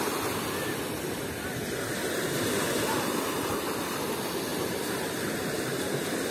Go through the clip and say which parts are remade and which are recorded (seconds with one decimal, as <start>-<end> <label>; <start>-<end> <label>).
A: 0.0-6.3 recorded